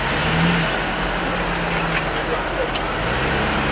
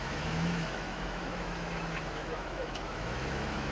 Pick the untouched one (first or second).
first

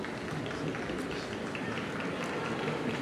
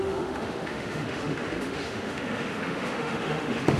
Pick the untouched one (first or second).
first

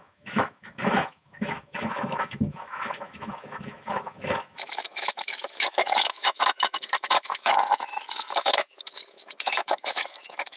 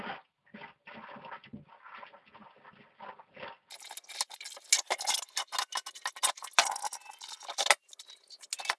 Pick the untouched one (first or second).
second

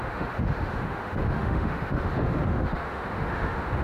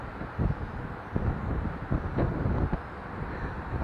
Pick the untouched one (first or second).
second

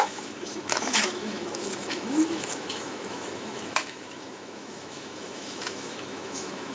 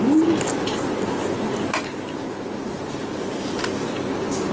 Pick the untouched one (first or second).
second